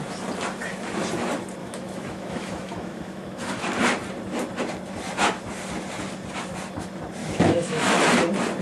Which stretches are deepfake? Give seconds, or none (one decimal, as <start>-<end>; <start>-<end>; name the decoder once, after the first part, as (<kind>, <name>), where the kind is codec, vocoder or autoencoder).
1.6-3.6 (autoencoder, DAC-VAE); 7.2-8.0